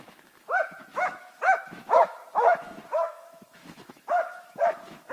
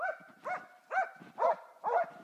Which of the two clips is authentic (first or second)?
second